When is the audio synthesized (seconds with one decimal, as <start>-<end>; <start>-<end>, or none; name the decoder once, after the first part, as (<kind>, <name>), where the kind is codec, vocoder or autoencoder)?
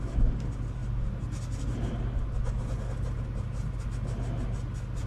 none